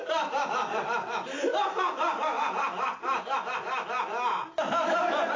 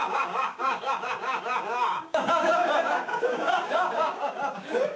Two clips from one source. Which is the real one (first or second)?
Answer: first